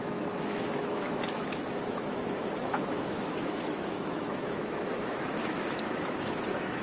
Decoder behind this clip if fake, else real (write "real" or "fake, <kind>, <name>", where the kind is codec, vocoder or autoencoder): fake, autoencoder, DAC-VAE